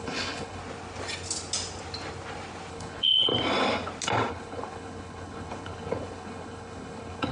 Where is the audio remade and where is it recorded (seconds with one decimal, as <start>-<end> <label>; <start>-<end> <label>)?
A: 0.0-0.6 remade; 0.6-2.7 recorded; 2.7-3.3 remade; 3.3-4.3 recorded; 4.3-7.3 remade